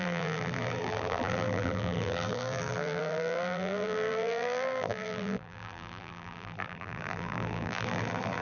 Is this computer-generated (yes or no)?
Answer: yes